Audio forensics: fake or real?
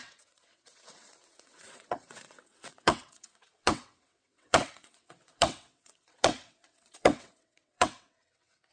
fake